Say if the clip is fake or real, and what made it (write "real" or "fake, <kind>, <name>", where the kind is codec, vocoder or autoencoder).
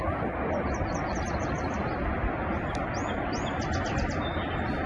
real